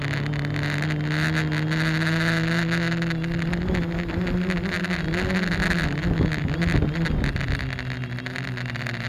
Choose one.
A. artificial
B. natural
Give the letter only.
B